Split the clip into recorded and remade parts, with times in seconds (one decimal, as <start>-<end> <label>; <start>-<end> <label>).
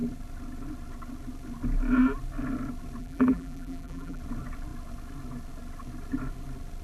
0.0-3.0 recorded; 3.0-4.2 remade; 4.2-6.8 recorded